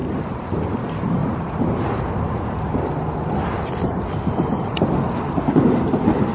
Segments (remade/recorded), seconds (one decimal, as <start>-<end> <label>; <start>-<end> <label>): 0.0-6.3 recorded